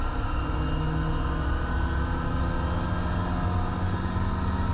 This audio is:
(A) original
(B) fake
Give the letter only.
A